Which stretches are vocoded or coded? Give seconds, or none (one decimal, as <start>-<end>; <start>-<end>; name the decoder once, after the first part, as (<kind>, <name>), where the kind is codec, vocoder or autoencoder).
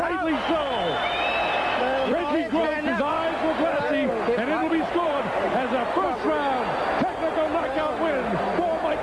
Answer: 4.6-5.2 (vocoder, BigVGAN v2)